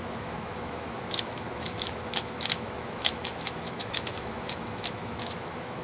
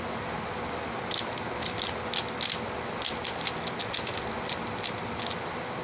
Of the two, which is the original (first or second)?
second